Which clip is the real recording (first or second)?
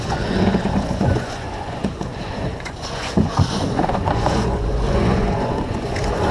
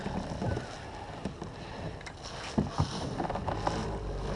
second